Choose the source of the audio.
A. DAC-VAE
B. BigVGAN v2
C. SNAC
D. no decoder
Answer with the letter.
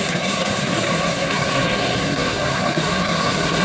C